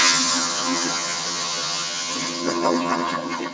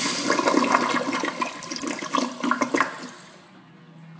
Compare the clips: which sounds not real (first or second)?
first